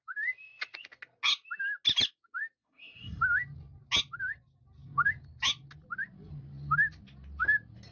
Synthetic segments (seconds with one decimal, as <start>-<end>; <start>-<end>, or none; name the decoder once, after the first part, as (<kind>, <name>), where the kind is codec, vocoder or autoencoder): 2.6-3.2 (codec, SNAC)